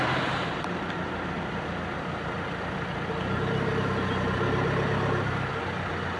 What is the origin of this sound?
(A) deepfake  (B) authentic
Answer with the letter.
A